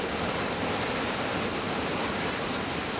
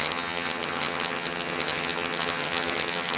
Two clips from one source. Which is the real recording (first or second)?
first